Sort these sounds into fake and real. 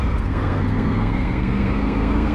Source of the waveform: fake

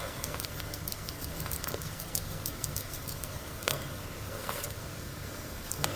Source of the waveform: fake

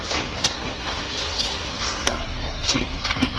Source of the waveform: fake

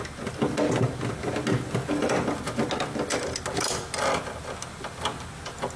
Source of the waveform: real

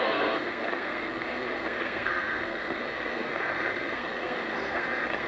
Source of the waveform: fake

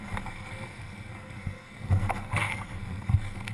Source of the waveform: fake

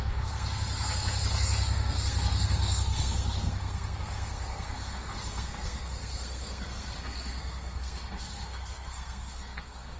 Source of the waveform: fake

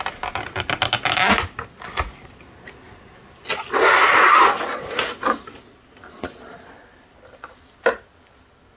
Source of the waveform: real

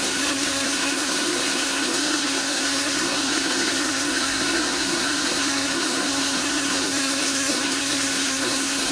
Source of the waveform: fake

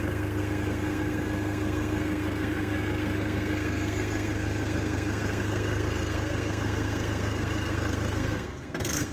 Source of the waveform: fake